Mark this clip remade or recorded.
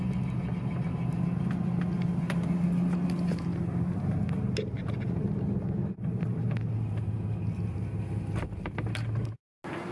recorded